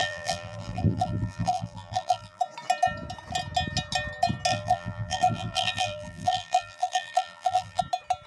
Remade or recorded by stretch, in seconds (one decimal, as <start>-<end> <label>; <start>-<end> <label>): 0.0-2.4 remade; 2.4-4.5 recorded; 4.5-7.8 remade; 7.8-8.3 recorded